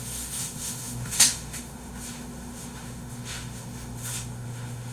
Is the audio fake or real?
fake